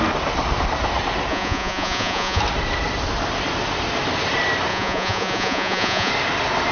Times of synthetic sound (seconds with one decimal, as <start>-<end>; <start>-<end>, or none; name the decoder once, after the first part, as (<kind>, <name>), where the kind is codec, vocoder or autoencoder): 1.3-2.4 (vocoder, Vocos); 4.7-6.1